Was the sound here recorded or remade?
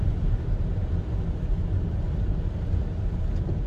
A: recorded